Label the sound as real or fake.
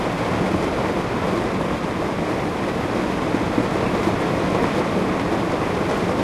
real